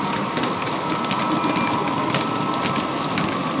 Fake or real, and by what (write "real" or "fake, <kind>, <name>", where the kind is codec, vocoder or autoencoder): real